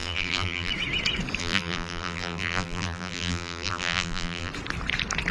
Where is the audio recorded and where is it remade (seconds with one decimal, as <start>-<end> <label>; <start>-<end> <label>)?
0.0-0.7 remade; 0.7-1.4 recorded; 1.4-4.5 remade; 4.5-5.3 recorded